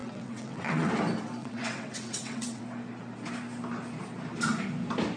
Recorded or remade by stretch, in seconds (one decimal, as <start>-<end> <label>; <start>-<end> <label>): 0.0-0.9 remade; 0.9-1.4 recorded; 1.4-2.6 remade; 2.6-5.2 recorded